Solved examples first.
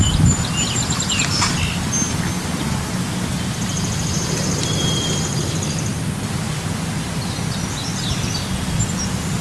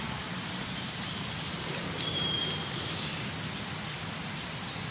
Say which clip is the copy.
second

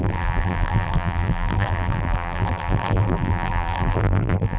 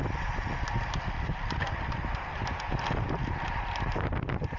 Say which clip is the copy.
first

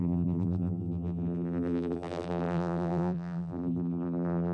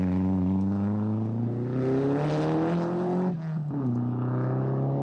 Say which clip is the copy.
first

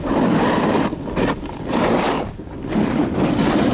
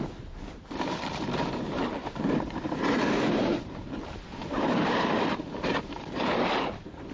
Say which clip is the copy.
second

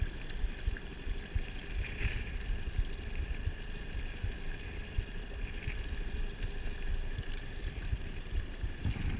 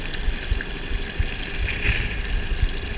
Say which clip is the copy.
first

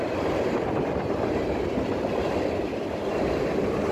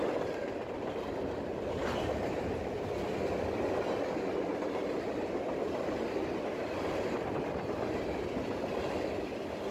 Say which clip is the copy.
first